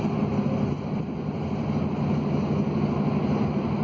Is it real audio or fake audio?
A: real